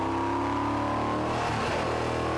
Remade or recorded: recorded